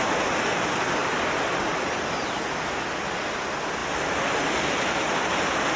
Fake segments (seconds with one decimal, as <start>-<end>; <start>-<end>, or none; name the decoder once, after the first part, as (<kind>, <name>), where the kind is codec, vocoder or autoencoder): none